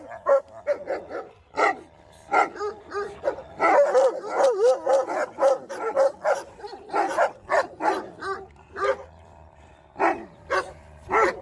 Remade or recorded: recorded